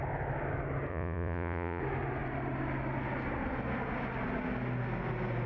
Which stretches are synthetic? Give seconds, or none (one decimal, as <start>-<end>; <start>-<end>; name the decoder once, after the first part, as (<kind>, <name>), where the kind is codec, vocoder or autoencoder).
0.9-1.8 (vocoder, Vocos)